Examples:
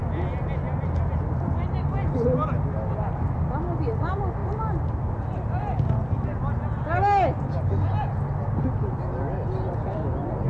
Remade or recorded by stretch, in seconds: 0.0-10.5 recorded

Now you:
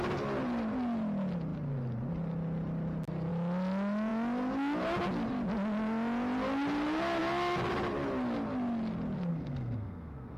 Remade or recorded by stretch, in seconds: 0.0-9.3 recorded; 9.3-10.4 remade

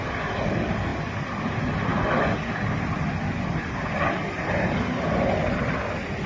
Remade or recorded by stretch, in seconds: 0.0-6.3 recorded

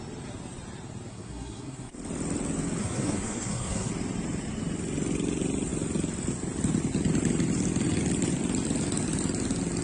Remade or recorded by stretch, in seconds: 0.0-1.1 recorded; 1.1-1.9 remade; 1.9-2.8 recorded; 2.8-3.9 remade; 3.9-9.8 recorded

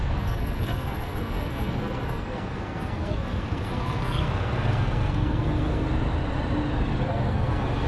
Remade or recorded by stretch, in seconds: 0.0-5.9 remade; 5.9-7.1 recorded; 7.1-7.9 remade